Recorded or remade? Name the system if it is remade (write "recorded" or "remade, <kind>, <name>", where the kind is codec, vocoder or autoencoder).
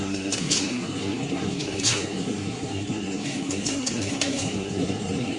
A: remade, codec, SNAC